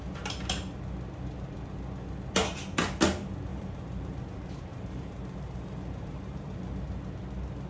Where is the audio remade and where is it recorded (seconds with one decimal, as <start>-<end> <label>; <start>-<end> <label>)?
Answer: 0.0-3.5 recorded; 3.5-4.2 remade; 4.2-4.7 recorded; 4.7-6.8 remade; 6.8-7.7 recorded